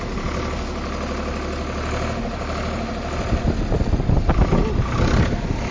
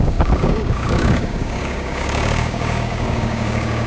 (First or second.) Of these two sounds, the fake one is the second